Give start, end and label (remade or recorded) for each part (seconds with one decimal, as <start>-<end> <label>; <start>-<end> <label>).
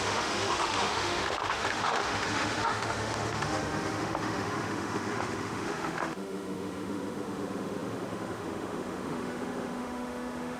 0.0-10.6 remade